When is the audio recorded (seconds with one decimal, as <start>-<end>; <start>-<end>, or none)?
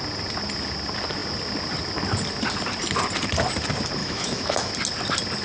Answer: 0.0-4.0; 4.7-5.4